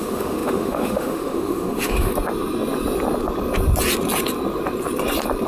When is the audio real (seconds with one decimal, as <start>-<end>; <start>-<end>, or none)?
2.1-5.5